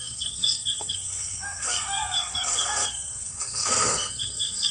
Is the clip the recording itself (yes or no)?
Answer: no